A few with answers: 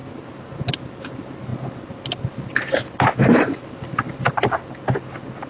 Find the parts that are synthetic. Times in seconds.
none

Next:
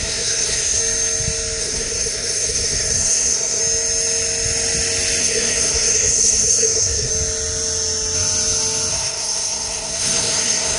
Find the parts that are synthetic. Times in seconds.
0.0-0.8 (codec, SNAC); 1.6-3.6; 5.2-7.1; 8.9-10.8

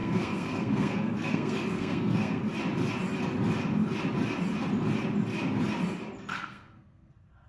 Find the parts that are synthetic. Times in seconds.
0.0-2.4 (codec, SNAC); 6.3-7.1